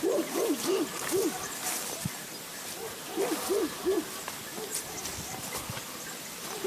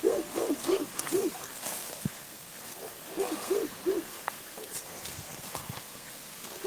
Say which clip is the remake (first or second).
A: second